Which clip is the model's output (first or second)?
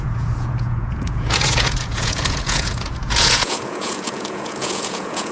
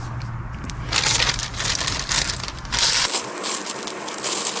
first